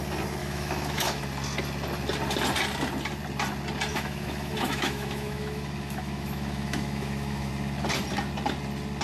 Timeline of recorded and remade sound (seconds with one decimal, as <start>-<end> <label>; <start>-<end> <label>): 0.0-0.4 recorded; 0.4-1.2 remade; 1.2-3.9 recorded; 3.9-7.5 remade; 7.5-9.0 recorded